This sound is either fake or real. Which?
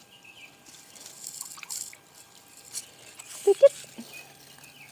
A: real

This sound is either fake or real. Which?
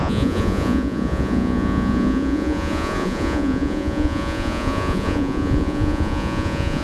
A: fake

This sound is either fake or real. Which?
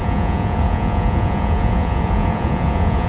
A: fake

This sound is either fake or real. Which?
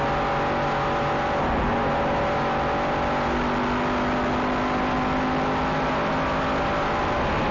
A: real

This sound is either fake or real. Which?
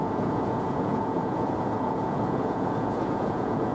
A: fake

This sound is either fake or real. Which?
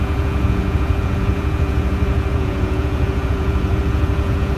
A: fake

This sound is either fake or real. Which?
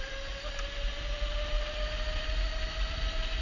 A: real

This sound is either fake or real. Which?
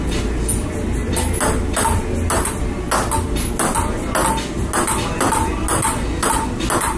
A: real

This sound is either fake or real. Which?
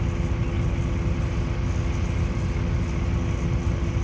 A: real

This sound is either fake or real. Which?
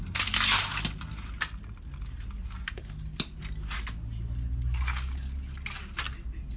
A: real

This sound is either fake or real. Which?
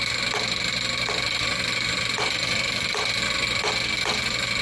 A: real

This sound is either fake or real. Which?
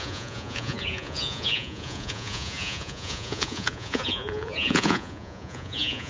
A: fake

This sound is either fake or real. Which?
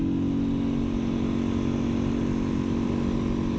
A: real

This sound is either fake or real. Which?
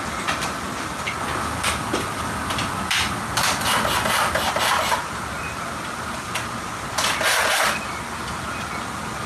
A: real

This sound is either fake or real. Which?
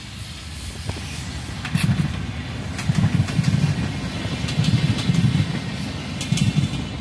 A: real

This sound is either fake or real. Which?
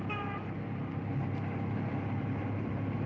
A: real